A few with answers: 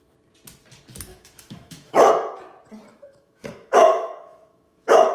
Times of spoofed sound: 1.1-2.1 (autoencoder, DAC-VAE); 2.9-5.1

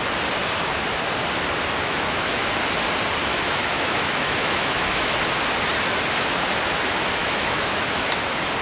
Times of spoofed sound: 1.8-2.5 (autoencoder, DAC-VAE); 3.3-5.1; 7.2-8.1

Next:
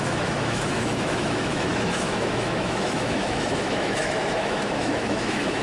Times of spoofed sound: 0.0-5.6 (autoencoder, DAC-VAE)